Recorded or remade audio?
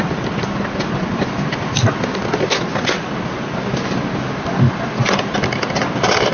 recorded